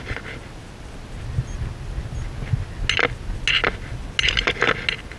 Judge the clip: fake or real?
real